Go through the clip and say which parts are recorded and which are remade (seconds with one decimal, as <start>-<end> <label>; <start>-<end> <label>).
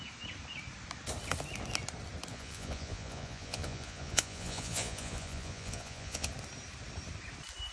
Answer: 0.0-2.3 recorded; 2.3-6.3 remade; 6.3-7.7 recorded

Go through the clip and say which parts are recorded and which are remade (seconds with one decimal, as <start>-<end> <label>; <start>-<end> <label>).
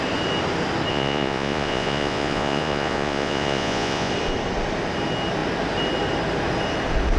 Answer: 0.0-0.9 recorded; 0.9-4.1 remade; 4.1-7.2 recorded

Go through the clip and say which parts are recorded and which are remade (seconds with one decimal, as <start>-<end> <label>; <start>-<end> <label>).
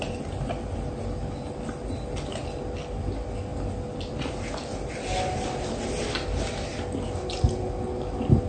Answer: 0.0-8.5 recorded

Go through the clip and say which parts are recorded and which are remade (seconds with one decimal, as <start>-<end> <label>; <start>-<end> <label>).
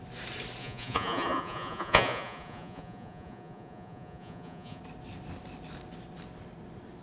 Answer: 0.0-0.6 recorded; 0.6-4.8 remade; 4.8-7.0 recorded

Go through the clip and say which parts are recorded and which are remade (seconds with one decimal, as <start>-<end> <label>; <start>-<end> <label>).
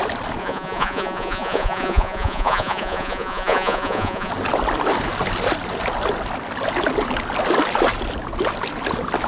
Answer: 0.0-0.4 recorded; 0.4-4.3 remade; 4.3-9.3 recorded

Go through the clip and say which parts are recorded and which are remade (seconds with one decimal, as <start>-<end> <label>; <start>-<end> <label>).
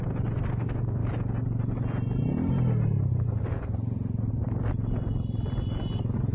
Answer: 0.0-6.3 recorded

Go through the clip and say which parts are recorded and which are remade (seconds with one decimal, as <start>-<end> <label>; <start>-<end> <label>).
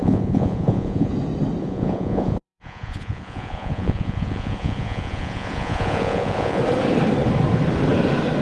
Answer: 0.0-1.1 remade; 1.1-1.6 recorded; 1.6-6.6 remade; 6.6-8.4 recorded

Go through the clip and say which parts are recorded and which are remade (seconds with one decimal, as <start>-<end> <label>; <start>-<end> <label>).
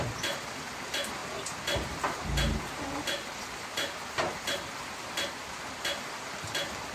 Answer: 0.0-6.9 recorded